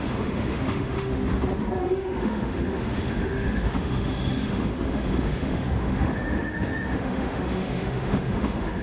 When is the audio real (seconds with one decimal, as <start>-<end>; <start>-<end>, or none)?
1.2-1.8